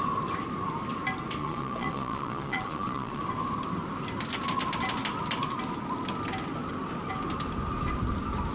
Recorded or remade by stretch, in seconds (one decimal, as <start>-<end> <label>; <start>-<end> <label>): 0.0-1.4 recorded; 1.4-3.2 remade; 3.2-8.5 recorded